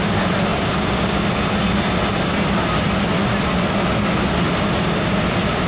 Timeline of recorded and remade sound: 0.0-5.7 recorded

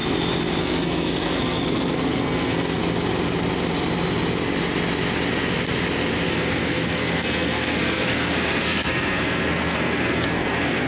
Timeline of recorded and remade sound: 0.0-0.6 recorded; 0.6-2.8 remade; 2.8-6.3 recorded; 6.3-10.9 remade

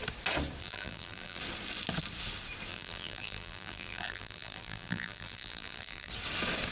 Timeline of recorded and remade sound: 0.0-0.6 recorded; 0.6-1.4 remade; 1.4-2.7 recorded; 2.7-6.1 remade; 6.1-6.7 recorded